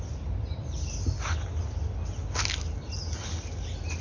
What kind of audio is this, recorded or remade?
recorded